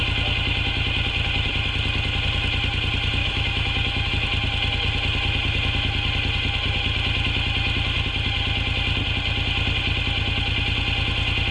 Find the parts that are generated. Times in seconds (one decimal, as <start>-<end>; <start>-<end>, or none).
3.2-4.1